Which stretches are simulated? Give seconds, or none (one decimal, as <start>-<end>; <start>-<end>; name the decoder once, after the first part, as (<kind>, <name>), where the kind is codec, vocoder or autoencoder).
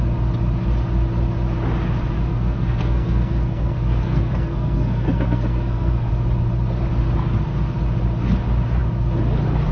2.3-6.1 (codec, SNAC)